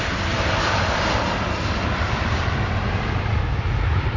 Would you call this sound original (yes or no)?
no